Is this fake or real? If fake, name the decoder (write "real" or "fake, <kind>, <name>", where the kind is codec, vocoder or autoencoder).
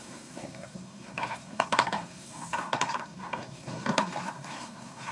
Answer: fake, codec, SNAC